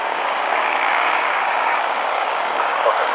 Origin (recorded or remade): remade